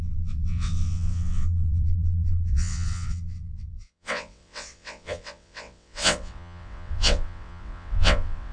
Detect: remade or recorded remade